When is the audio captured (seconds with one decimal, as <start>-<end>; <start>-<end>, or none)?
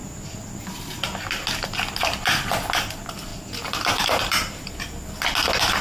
0.0-3.3; 4.7-5.8